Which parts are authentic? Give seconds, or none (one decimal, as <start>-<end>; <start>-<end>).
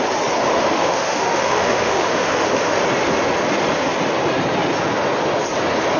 0.0-0.7; 2.8-6.0